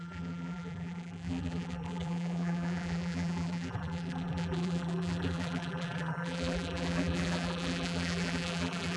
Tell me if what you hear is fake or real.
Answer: fake